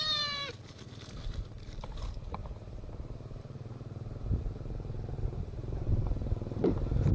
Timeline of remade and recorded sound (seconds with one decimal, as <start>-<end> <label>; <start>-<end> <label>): 0.0-2.4 remade; 2.4-3.4 recorded; 3.4-7.1 remade